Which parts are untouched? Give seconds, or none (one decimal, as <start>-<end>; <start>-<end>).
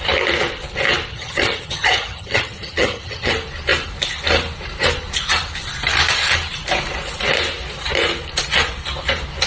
0.0-1.1; 3.3-9.5